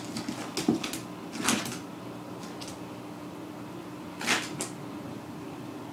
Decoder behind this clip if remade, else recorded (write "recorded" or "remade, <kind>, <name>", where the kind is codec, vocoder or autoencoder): recorded